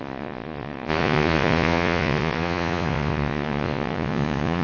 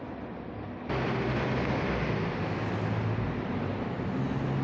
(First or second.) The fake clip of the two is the first